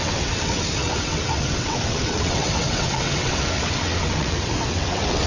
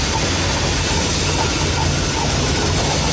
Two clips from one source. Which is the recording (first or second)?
second